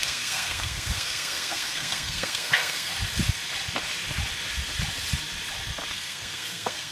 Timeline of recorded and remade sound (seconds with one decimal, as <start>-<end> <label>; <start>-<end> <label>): 0.0-2.9 remade; 2.9-5.9 recorded; 5.9-6.9 remade